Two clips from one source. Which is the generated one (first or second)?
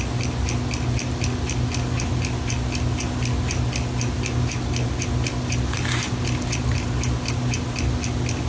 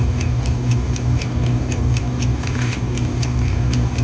second